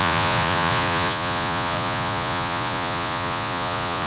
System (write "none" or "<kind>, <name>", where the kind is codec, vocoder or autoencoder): vocoder, Vocos